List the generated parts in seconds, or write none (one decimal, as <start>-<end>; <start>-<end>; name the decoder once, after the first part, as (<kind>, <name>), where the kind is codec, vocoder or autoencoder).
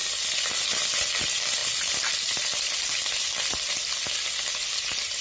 none